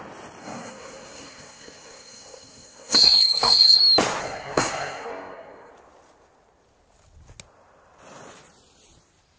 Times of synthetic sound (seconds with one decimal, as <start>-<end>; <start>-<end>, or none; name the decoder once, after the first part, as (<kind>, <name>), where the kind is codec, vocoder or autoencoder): 0.4-3.8 (codec, SNAC); 4.2-5.7